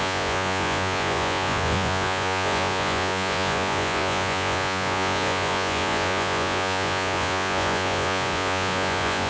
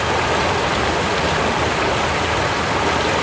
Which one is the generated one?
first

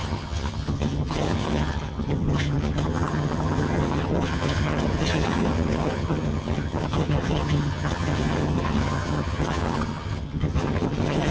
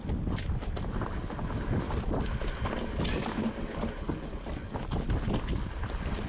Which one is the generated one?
first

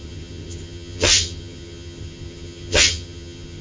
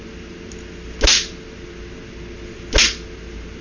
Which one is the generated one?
first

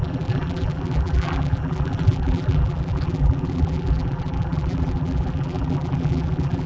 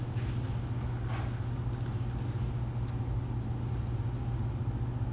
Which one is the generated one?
first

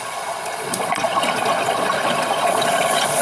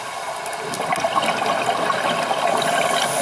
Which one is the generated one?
first